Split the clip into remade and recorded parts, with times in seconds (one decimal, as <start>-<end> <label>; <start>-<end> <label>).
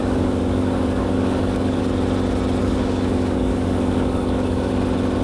0.0-1.8 remade; 1.8-2.6 recorded; 2.6-4.7 remade; 4.7-5.2 recorded